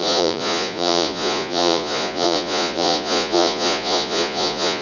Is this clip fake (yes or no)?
yes